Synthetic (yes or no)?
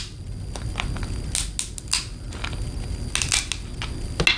no